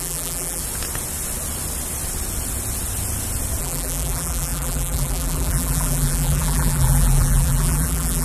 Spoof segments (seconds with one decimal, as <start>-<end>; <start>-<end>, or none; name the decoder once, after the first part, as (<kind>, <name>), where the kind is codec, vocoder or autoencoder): 0.0-0.6 (vocoder, BigVGAN v2); 3.6-8.2